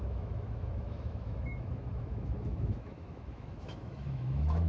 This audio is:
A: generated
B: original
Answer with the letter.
A